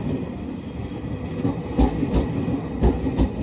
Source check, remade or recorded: recorded